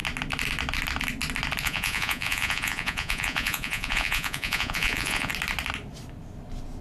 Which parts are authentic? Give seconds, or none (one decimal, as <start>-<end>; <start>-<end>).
0.0-1.6; 5.3-6.8